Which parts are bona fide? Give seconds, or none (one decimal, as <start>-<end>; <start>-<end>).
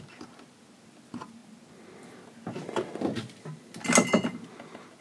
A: 0.0-5.0